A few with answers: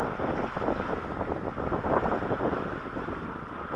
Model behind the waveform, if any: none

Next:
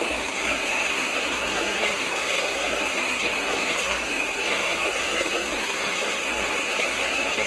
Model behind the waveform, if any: codec, SNAC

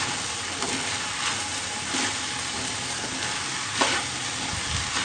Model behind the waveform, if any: none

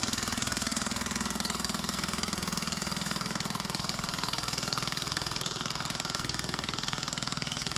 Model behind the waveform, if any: codec, SNAC